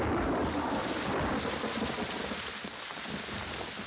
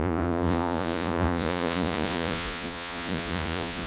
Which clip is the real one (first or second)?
first